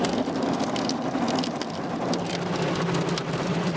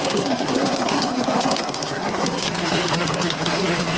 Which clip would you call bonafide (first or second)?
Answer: first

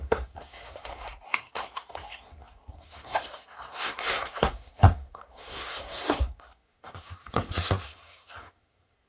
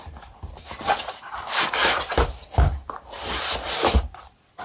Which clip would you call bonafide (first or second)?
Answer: second